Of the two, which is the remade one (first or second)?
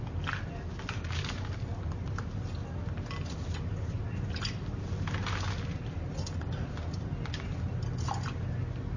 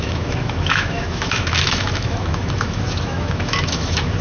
second